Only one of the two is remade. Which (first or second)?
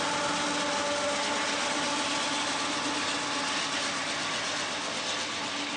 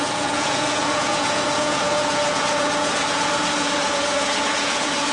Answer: second